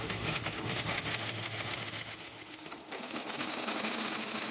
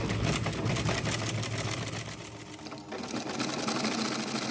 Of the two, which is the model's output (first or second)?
first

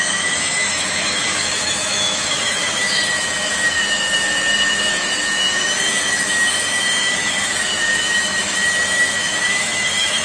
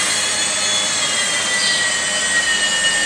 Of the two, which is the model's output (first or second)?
first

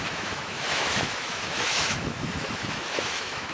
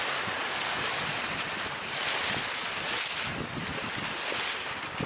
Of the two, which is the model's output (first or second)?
first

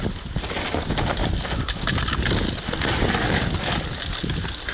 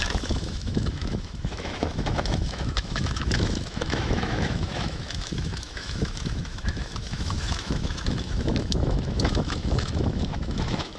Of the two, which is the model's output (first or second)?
second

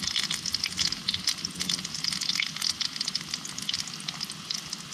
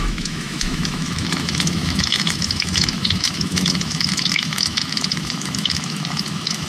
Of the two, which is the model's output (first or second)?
second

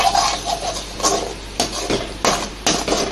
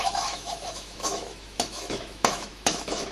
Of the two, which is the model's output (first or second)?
second